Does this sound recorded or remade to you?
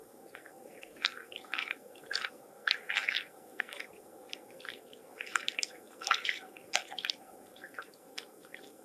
remade